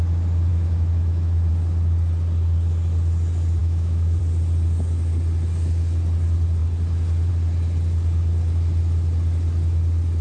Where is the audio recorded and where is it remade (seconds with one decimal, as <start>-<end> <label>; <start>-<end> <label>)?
0.0-0.5 recorded; 0.5-1.5 remade; 1.5-3.6 recorded; 3.6-4.2 remade; 4.2-10.2 recorded